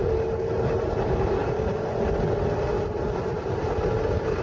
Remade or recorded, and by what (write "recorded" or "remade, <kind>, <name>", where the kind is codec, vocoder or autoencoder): recorded